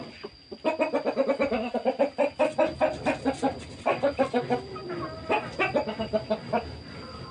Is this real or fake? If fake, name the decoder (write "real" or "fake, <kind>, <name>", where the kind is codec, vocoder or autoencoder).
real